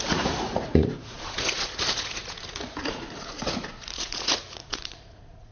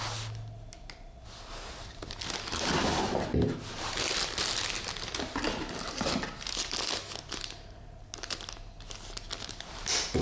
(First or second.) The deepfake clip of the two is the first